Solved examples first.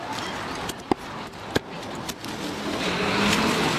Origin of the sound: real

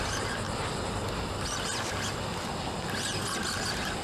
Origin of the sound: real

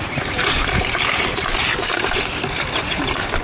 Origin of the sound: fake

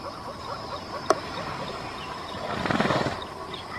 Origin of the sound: real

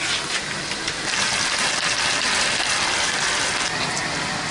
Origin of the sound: fake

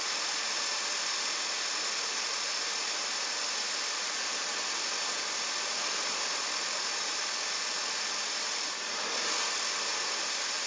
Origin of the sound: fake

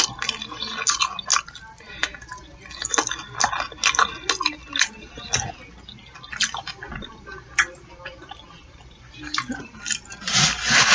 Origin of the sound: real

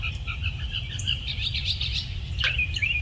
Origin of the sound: fake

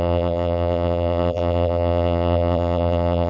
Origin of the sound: fake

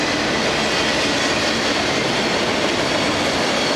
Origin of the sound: real